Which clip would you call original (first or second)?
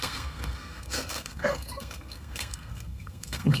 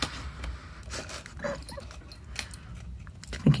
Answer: second